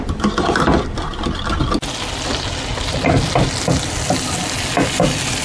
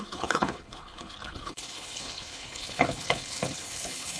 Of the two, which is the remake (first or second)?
second